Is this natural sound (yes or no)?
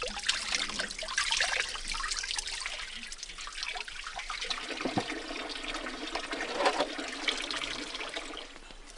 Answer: yes